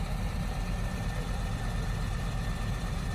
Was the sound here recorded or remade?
remade